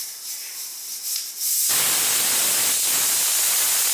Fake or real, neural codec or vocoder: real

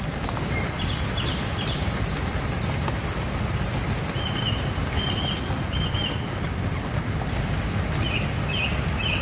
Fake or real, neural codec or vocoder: real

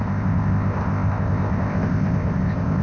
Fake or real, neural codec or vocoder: fake, codec, ZipCodec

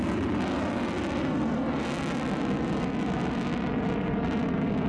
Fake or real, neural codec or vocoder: real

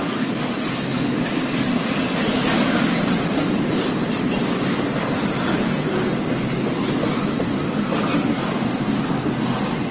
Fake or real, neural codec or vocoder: real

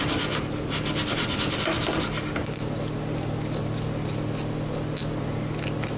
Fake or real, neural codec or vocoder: real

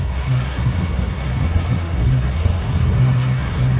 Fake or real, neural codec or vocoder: fake, codec, SNAC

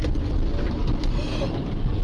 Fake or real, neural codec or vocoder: real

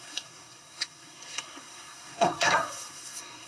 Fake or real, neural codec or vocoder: fake, codec, SNAC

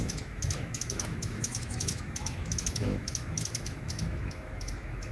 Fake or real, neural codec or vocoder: fake, autoencoder, DAC-VAE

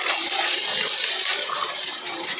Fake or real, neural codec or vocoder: fake, vocoder, BigVGAN v2